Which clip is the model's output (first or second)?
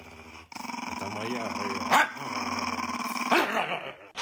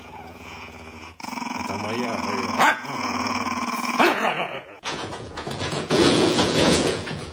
second